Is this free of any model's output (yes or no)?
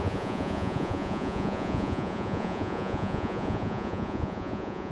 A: no